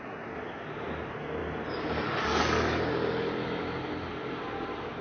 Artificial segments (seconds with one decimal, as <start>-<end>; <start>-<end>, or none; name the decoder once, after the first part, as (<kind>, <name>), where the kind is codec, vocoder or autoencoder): none

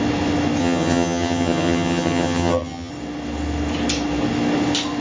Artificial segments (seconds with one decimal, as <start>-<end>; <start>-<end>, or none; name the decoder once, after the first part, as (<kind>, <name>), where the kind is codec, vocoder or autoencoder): 0.6-2.9 (vocoder, HiFi-GAN)

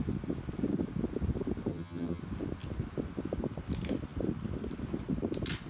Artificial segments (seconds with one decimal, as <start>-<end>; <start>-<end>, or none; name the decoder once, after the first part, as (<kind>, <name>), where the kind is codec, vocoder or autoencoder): 1.7-2.2 (vocoder, HiFi-GAN)

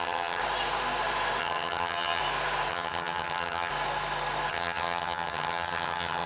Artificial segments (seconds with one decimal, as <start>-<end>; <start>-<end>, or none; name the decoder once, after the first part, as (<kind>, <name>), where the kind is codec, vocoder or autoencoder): 0.0-0.4 (vocoder, HiFi-GAN); 1.4-2.2; 2.7-3.7; 4.5-6.3

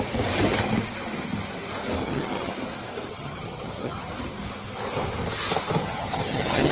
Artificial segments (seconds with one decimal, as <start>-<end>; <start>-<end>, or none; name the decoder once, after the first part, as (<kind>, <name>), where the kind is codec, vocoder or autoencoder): 2.0-2.5 (vocoder, HiFi-GAN); 3.1-4.1; 5.8-6.7

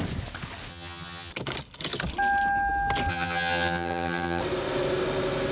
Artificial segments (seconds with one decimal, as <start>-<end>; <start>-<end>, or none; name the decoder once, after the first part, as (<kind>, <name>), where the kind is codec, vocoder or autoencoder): 0.7-1.3 (vocoder, HiFi-GAN); 3.1-4.4

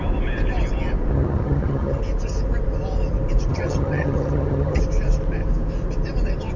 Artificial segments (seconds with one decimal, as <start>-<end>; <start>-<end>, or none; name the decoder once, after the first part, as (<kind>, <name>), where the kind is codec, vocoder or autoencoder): 1.1-2.0 (vocoder, HiFi-GAN); 3.5-4.8